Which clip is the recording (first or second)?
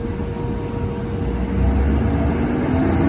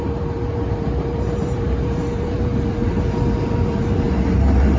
first